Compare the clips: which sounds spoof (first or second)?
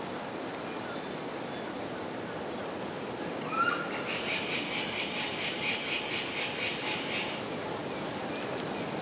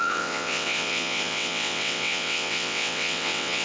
second